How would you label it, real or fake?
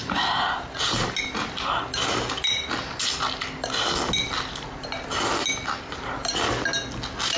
real